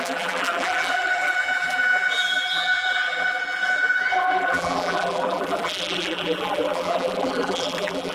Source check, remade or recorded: remade